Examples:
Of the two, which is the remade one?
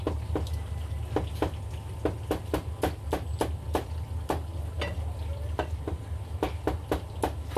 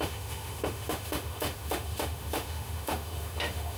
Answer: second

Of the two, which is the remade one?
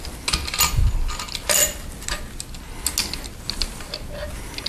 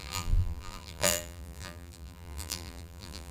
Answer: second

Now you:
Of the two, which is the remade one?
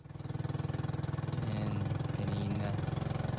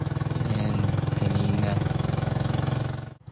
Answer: second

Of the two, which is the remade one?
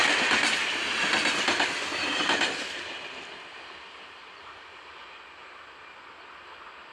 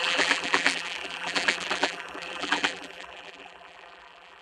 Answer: second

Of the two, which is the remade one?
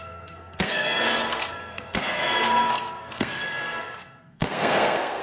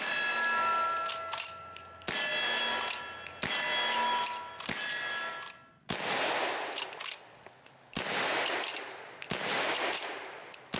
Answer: first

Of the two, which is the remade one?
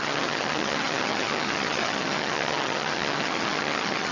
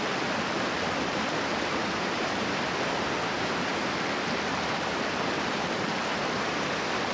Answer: first